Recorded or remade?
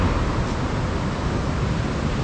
recorded